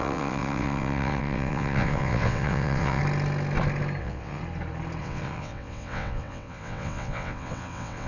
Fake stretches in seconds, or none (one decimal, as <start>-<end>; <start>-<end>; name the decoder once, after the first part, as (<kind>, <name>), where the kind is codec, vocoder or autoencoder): 0.0-3.0 (vocoder, WaveNeXt); 4.0-4.4; 5.0-8.1